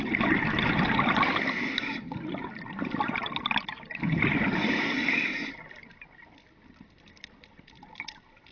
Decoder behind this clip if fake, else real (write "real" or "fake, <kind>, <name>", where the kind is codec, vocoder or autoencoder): real